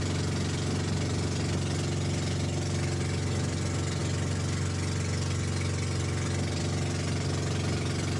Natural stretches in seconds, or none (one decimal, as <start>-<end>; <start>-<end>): 0.0-8.2